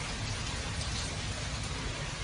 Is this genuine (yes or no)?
yes